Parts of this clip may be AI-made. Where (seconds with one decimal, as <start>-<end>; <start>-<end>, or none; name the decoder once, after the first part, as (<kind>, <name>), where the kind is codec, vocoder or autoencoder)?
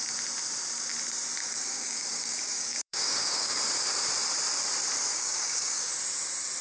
1.4-3.6 (codec, DAC); 5.1-5.9